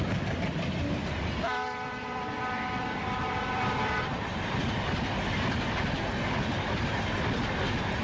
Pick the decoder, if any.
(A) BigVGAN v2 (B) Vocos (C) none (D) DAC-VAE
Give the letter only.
A